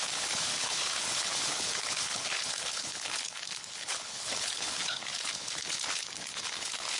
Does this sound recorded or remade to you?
remade